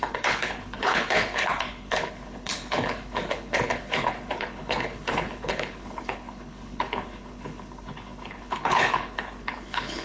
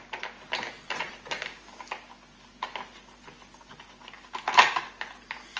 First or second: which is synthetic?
first